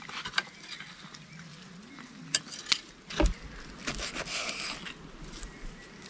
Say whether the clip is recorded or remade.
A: recorded